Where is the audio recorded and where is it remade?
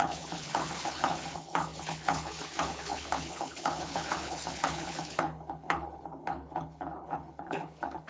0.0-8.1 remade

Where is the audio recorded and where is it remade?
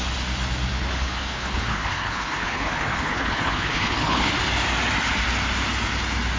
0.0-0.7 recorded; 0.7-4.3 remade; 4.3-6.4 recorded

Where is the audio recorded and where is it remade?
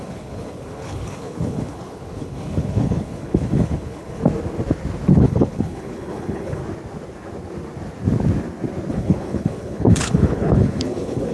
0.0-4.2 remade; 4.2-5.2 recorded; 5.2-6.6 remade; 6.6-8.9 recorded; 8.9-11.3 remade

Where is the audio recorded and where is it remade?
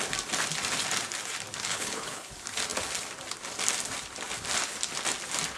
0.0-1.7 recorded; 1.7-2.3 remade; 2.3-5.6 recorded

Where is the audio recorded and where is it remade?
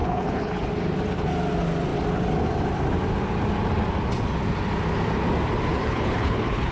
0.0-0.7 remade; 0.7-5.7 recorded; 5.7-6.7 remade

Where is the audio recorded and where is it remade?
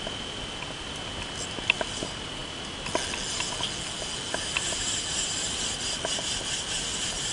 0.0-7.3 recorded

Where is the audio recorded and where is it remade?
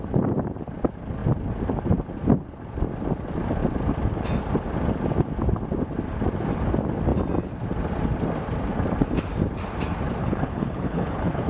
0.0-10.2 recorded; 10.2-11.5 remade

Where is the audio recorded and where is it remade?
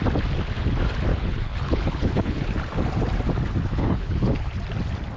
0.0-1.1 recorded; 1.1-2.4 remade; 2.4-3.7 recorded; 3.7-4.5 remade; 4.5-5.2 recorded